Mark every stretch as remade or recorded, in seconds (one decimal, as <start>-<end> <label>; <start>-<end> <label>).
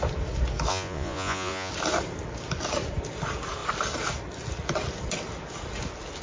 0.0-0.7 recorded; 0.7-1.7 remade; 1.7-6.2 recorded